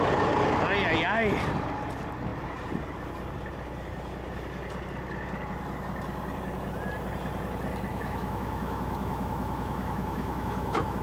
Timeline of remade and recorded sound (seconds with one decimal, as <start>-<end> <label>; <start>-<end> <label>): 0.0-7.9 recorded; 7.9-11.0 remade